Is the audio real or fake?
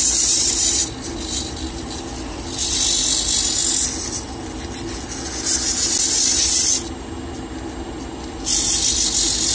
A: real